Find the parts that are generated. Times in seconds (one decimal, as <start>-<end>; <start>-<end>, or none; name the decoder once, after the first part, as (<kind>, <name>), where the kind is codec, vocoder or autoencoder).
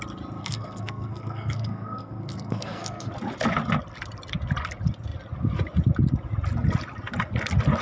0.4-3.1 (codec, SNAC)